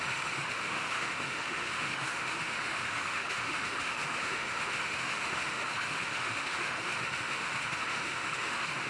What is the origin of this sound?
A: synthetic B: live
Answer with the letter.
A